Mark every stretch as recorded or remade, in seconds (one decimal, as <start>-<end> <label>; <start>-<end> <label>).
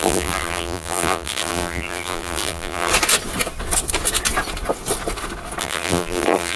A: 0.0-2.9 remade; 2.9-5.6 recorded; 5.6-6.6 remade